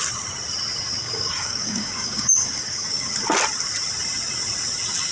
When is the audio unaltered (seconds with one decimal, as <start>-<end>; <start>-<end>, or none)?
0.0-1.0; 3.1-5.1